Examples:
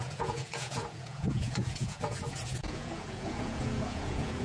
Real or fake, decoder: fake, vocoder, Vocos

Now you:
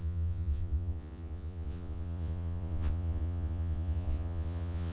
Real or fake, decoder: fake, vocoder, Vocos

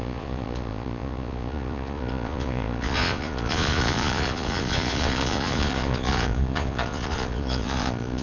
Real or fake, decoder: fake, vocoder, Vocos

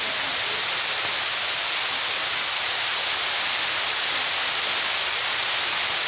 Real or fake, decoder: real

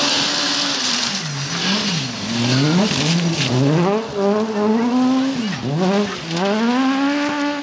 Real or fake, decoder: real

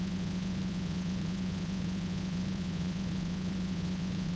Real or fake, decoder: fake, vocoder, Vocos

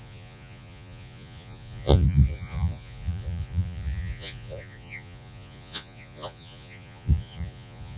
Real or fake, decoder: fake, vocoder, Vocos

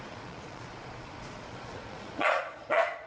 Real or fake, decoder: fake, vocoder, Vocos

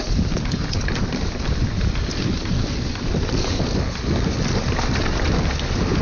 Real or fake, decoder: real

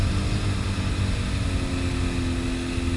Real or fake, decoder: real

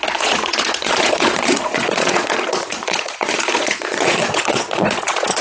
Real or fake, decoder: fake, vocoder, Vocos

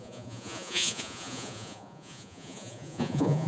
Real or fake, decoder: fake, vocoder, Vocos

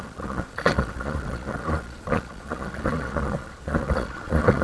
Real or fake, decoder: fake, vocoder, Vocos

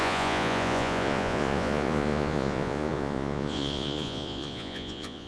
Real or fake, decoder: fake, vocoder, Vocos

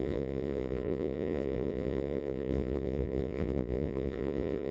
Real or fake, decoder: fake, vocoder, Vocos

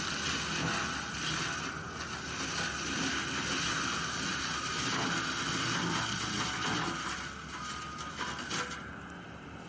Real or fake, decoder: real